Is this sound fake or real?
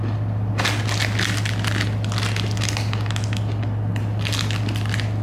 real